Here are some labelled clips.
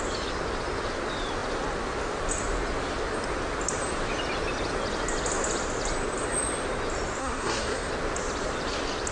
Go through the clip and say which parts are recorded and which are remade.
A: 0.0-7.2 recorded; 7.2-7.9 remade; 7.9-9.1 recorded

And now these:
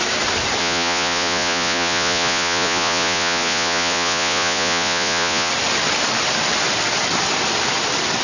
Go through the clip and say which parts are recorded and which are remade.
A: 0.0-0.6 recorded; 0.6-5.5 remade; 5.5-8.2 recorded

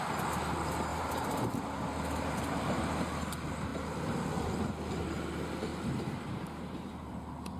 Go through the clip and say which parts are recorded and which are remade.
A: 0.0-0.9 recorded; 0.9-2.8 remade; 2.8-5.7 recorded; 5.7-7.1 remade; 7.1-7.6 recorded

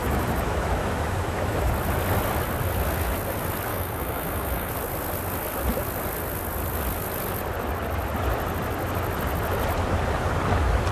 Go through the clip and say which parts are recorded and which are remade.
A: 0.0-1.7 remade; 1.7-3.7 recorded; 3.7-4.7 remade; 4.7-10.9 recorded

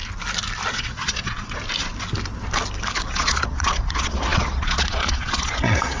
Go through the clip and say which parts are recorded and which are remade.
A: 0.0-0.7 recorded; 0.7-1.6 remade; 1.6-3.1 recorded; 3.1-6.0 remade

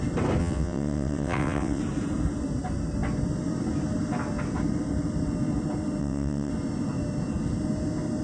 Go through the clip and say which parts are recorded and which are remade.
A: 0.0-0.4 recorded; 0.4-1.8 remade; 1.8-6.0 recorded; 6.0-6.5 remade; 6.5-8.2 recorded